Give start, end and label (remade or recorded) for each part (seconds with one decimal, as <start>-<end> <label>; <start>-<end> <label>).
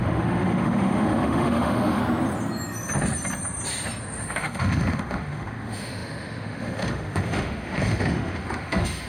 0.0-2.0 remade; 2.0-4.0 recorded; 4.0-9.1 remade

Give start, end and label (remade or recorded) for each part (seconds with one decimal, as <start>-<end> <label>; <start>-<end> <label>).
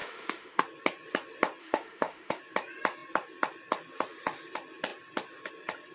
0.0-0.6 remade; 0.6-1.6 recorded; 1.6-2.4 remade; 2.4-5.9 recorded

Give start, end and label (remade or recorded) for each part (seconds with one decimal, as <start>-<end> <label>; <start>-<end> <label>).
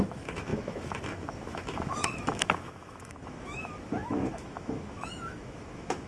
0.0-6.1 remade